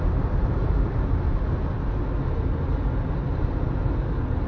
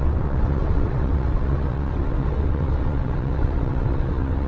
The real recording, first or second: first